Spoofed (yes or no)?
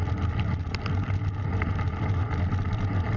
no